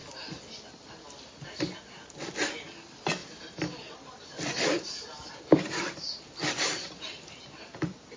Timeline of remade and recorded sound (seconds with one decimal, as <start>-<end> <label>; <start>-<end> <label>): 0.0-0.7 remade; 0.7-3.2 recorded; 3.2-7.4 remade; 7.4-8.2 recorded